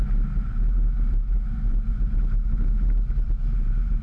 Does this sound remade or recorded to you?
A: recorded